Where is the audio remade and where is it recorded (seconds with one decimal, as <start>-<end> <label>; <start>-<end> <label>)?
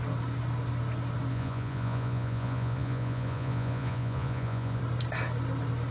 0.0-1.3 recorded; 1.3-4.8 remade; 4.8-5.9 recorded